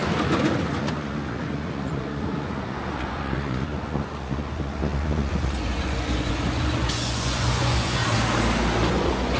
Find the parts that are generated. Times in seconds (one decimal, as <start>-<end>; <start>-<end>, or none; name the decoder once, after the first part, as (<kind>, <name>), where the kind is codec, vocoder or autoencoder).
0.8-8.0 (vocoder, Vocos); 8.9-9.4